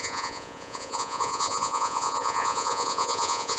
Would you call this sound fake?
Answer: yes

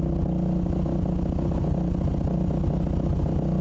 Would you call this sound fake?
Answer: no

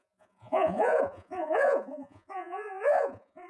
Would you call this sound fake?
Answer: yes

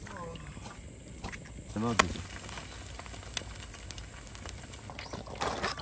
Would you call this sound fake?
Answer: no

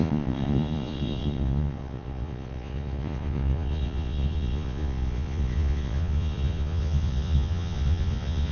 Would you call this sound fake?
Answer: yes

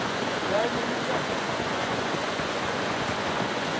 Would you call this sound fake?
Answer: yes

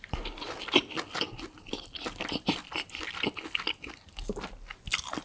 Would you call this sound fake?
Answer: no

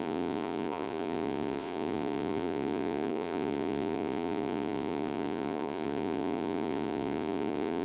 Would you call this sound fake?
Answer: yes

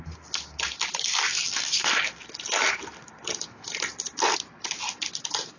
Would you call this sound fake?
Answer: no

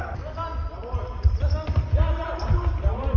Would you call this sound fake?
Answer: no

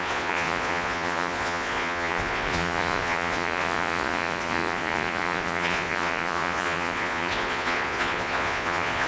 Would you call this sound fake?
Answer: yes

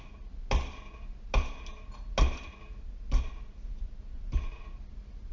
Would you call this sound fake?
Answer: no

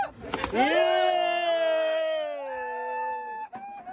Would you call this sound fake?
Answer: no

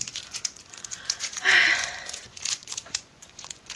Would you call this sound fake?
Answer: yes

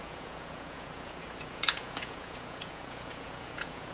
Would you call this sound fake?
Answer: yes